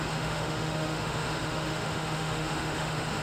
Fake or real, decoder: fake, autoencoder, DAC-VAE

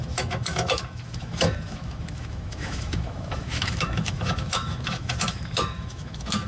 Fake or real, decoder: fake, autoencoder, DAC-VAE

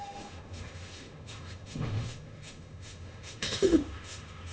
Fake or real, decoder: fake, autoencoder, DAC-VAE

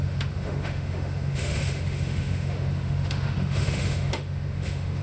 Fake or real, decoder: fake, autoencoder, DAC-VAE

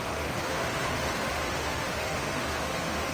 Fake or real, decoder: fake, autoencoder, DAC-VAE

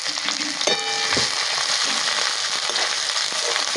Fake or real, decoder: real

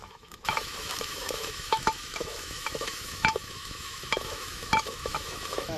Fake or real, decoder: fake, autoencoder, DAC-VAE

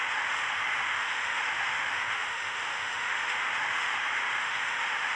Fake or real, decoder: fake, autoencoder, DAC-VAE